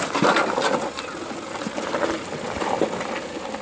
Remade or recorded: recorded